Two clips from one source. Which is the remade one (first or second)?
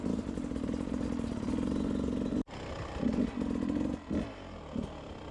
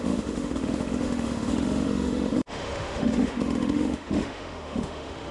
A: second